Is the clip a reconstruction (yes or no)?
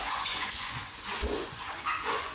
yes